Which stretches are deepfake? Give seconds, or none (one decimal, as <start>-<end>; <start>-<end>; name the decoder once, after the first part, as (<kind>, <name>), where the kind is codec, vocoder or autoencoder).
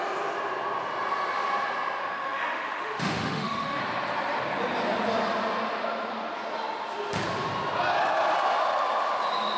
2.0-3.8 (autoencoder, DAC-VAE)